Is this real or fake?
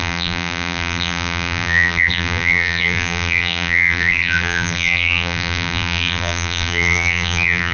fake